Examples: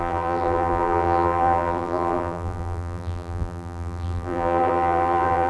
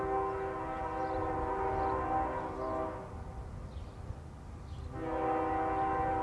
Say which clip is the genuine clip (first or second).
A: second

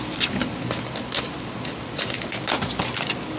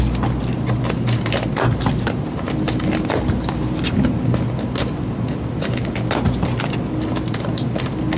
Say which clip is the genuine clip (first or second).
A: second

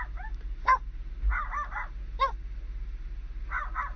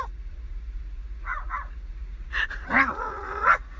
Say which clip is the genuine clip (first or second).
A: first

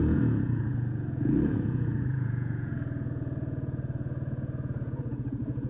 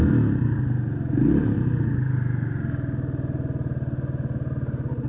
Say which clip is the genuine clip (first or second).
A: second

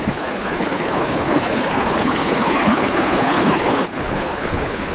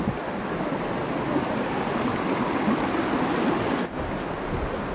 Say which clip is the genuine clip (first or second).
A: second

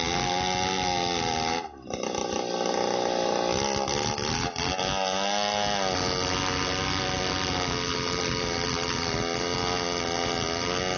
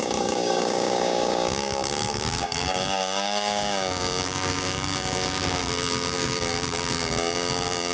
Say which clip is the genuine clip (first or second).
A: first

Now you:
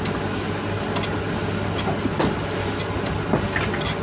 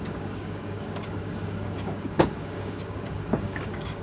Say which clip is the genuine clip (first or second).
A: first